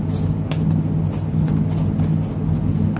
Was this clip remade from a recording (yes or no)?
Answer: no